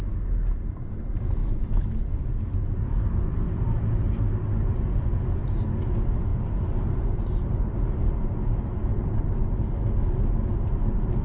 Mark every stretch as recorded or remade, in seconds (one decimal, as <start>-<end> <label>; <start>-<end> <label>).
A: 0.0-11.2 recorded